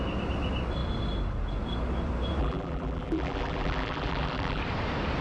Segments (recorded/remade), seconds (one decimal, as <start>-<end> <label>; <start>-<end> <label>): 0.0-2.4 recorded; 2.4-4.6 remade; 4.6-5.2 recorded